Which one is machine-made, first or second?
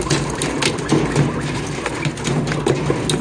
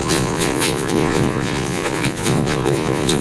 second